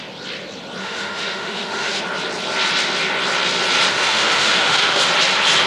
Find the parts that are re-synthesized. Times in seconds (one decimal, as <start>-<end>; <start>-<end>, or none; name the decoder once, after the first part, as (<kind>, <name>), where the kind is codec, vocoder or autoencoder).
0.8-2.0 (autoencoder, DAC-VAE); 3.9-5.0